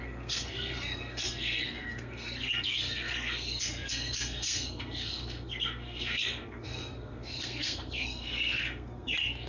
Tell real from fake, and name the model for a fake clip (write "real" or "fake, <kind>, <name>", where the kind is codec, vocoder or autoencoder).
fake, codec, SNAC